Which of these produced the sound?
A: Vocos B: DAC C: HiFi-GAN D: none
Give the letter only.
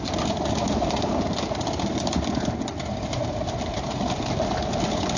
D